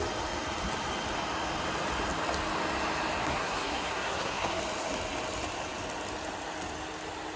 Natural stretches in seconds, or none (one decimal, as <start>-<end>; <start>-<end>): 0.0-3.2; 4.6-7.4